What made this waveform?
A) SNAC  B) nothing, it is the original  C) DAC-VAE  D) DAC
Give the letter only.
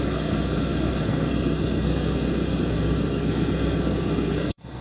A